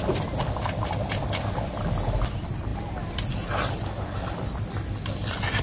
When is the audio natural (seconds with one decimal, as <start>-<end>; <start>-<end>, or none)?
0.0-5.6